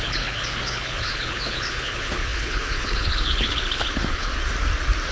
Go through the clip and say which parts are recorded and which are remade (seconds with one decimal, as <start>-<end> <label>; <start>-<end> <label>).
0.0-4.3 remade; 4.3-5.1 recorded